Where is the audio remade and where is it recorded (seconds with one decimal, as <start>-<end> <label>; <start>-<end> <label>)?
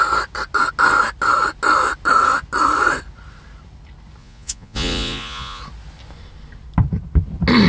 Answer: 0.0-4.2 recorded; 4.2-5.6 remade; 5.6-7.7 recorded